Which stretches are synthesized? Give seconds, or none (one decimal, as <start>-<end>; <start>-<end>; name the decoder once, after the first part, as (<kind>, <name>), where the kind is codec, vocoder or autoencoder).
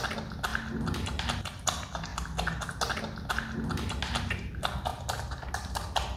none